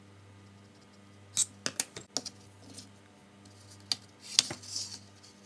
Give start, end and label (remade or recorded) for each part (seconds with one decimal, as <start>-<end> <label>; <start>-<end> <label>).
0.0-5.5 recorded